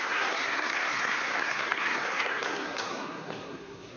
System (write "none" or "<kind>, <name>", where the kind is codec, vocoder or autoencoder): codec, SNAC